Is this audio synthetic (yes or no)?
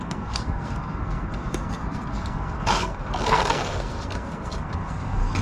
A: yes